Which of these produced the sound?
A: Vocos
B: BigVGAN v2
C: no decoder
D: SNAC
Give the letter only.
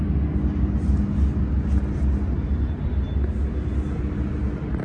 C